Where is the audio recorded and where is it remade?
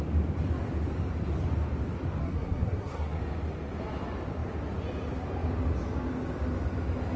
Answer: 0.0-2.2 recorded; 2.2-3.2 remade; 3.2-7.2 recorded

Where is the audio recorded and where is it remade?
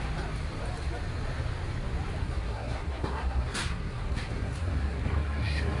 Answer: 0.0-2.2 recorded; 2.2-5.8 remade